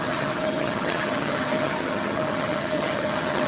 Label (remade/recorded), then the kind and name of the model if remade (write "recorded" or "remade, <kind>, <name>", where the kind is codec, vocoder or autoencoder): remade, vocoder, HiFi-GAN